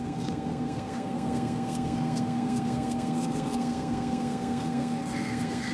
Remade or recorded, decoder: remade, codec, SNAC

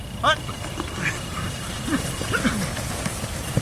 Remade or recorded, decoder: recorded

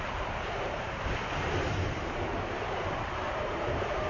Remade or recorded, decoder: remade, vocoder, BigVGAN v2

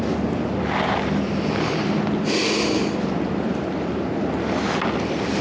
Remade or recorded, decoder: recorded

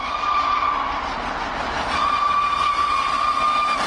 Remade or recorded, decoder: recorded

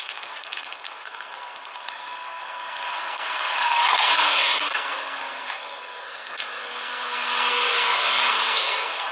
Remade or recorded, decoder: remade, codec, SNAC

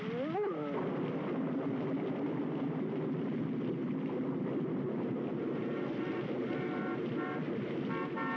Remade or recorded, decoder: recorded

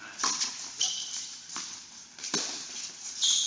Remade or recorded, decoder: recorded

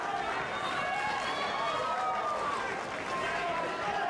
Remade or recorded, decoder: recorded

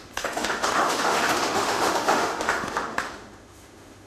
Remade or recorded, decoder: remade, autoencoder, DAC-VAE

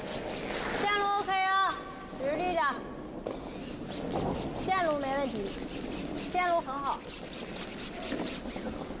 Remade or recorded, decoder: recorded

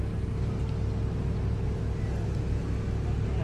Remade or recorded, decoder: recorded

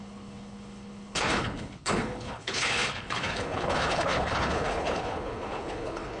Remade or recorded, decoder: remade, codec, HILCodec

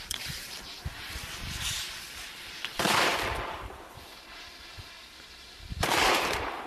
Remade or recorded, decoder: remade, vocoder, BigVGAN v2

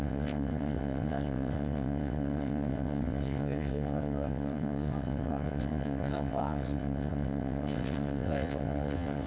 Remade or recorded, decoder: remade, vocoder, WaveNeXt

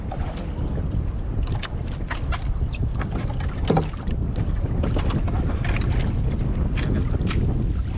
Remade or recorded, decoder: recorded